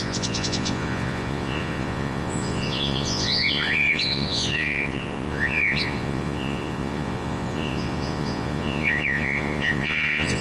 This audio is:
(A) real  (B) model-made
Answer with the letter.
B